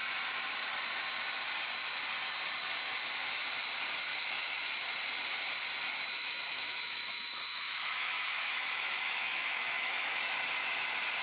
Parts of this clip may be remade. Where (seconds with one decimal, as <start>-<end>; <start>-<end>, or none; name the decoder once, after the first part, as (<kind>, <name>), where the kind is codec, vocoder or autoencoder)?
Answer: 4.1-4.7 (autoencoder, DAC-VAE); 6.1-10.2